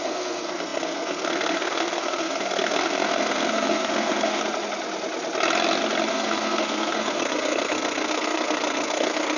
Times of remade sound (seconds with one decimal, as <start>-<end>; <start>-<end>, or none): 0.0-4.4; 6.1-9.4